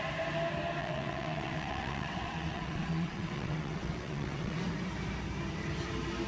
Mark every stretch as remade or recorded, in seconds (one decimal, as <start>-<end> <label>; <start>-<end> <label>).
0.0-0.8 recorded; 0.8-4.6 remade; 4.6-6.3 recorded